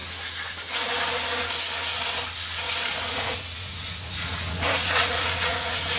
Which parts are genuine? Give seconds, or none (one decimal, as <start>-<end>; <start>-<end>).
0.0-3.1